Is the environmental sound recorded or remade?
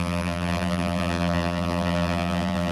remade